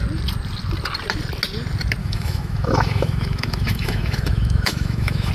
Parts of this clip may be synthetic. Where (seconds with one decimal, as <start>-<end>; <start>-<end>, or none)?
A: 2.0-5.3